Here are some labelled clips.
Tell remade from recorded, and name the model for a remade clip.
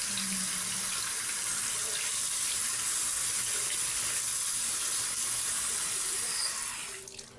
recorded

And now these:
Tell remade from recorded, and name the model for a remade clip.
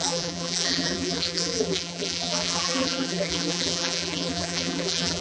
remade, vocoder, BigVGAN v2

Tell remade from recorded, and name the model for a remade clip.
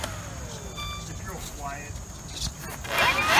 recorded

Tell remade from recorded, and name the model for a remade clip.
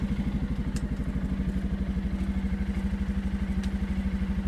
recorded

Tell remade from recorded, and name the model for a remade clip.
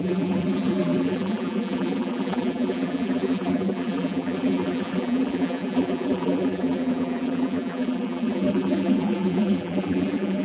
remade, vocoder, BigVGAN v2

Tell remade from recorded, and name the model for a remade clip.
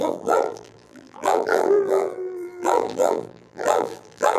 remade, vocoder, BigVGAN v2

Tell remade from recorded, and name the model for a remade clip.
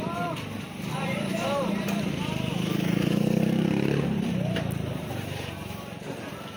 remade, vocoder, BigVGAN v2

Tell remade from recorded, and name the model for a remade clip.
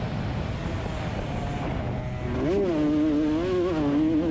recorded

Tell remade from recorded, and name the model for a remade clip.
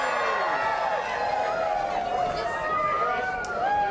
recorded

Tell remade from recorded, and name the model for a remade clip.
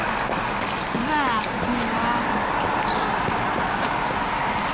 recorded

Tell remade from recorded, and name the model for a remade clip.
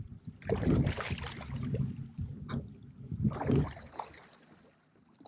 recorded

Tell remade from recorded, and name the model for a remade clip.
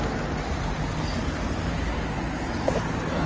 recorded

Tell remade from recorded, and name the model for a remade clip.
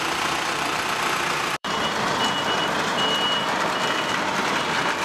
remade, vocoder, BigVGAN v2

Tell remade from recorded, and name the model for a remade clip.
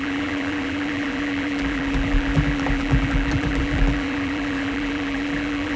remade, vocoder, BigVGAN v2